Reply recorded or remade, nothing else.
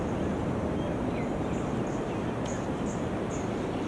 recorded